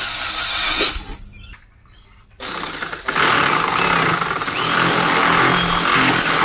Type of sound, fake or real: real